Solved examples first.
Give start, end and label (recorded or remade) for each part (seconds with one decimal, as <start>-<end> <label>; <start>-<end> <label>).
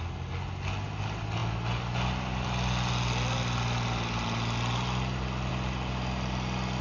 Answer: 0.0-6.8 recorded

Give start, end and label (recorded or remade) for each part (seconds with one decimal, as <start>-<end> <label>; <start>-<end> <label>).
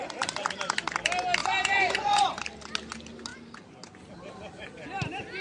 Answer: 0.0-1.4 recorded; 1.4-2.4 remade; 2.4-5.4 recorded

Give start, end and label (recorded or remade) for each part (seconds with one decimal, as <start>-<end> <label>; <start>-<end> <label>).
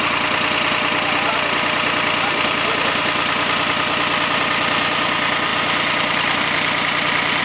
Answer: 0.0-7.4 recorded